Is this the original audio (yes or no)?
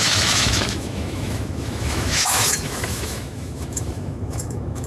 no